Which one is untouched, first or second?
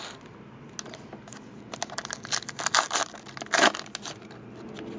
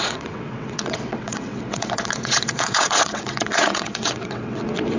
first